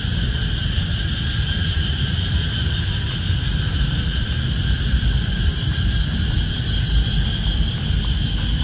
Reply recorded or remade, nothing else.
remade